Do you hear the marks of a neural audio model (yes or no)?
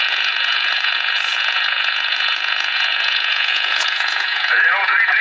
yes